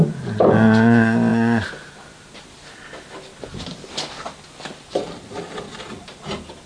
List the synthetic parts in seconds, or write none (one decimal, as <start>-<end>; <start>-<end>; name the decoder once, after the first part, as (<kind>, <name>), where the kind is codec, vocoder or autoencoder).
none